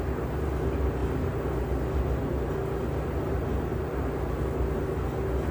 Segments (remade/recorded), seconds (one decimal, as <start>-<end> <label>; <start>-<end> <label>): 0.0-3.7 recorded; 3.7-4.4 remade; 4.4-5.5 recorded